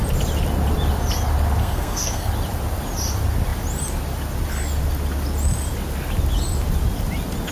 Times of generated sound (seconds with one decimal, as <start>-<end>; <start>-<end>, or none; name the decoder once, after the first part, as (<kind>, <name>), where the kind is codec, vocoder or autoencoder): 1.6-2.3 (codec, SNAC)